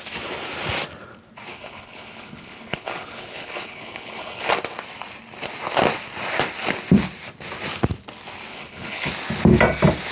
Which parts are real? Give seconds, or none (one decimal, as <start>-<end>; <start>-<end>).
0.0-1.5; 4.5-8.5; 9.1-10.1